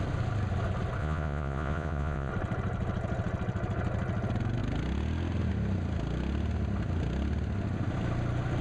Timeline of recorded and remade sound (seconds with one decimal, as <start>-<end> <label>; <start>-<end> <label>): 0.0-1.0 recorded; 1.0-2.3 remade; 2.3-8.6 recorded